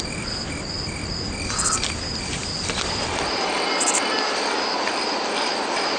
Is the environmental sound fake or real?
real